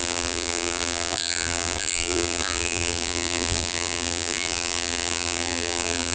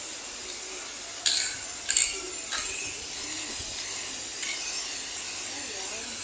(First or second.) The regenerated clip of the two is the first